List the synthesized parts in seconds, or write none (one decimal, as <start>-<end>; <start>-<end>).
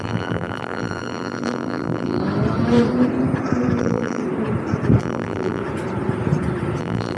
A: 0.0-2.2; 3.8-4.2; 5.0-5.6; 6.8-7.2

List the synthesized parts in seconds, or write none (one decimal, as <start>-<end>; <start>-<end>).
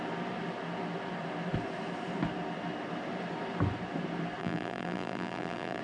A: 4.4-5.8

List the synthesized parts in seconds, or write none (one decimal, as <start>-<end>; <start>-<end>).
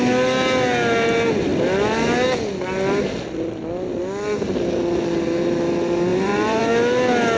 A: 6.1-6.7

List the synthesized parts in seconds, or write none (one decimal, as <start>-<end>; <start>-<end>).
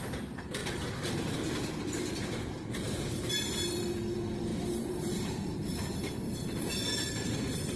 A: 0.6-3.3; 4.5-6.7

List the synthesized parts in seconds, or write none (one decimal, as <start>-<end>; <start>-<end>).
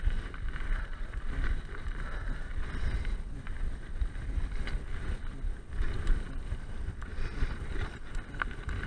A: none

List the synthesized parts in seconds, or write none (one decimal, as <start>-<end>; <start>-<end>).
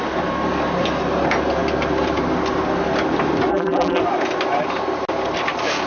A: 3.5-4.0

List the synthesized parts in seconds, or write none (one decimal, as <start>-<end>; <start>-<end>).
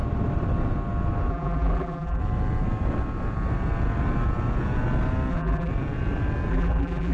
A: 1.3-2.2; 5.3-5.7; 6.5-7.1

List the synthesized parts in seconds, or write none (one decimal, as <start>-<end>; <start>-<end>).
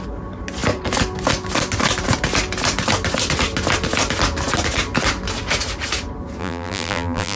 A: 6.4-7.4